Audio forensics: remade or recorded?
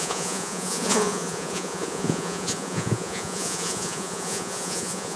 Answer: remade